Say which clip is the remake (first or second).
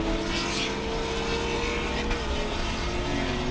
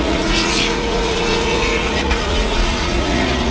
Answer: second